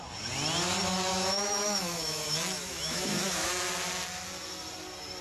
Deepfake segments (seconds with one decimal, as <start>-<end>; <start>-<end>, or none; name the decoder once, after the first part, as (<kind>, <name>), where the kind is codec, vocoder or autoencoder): 1.1-3.5 (autoencoder, DAC-VAE)